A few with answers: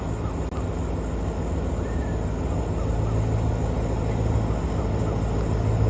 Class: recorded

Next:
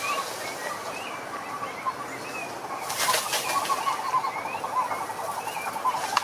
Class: recorded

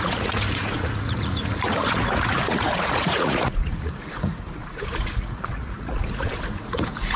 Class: remade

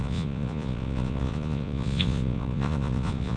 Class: remade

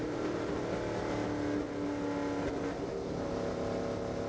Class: recorded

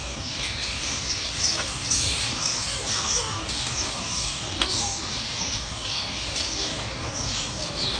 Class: remade